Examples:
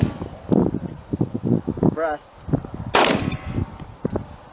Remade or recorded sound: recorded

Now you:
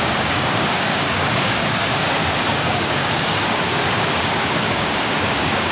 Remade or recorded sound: remade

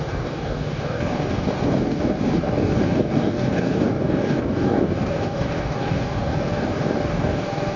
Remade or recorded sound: remade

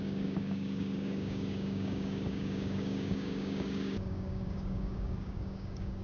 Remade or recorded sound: remade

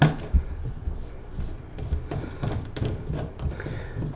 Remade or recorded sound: recorded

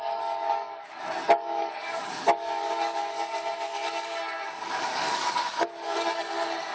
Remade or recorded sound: remade